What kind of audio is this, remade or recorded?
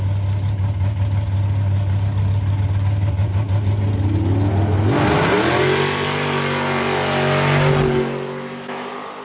recorded